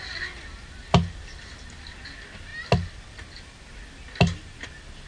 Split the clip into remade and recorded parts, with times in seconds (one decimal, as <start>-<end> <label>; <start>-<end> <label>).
0.0-5.1 recorded